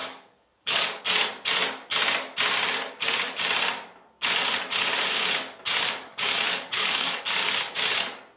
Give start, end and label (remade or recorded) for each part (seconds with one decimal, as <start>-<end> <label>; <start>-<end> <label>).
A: 0.0-1.0 remade; 1.0-6.1 recorded; 6.1-7.2 remade; 7.2-8.4 recorded